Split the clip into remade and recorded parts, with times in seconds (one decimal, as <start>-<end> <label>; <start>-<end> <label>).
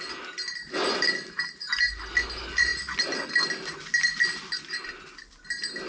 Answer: 0.0-5.9 recorded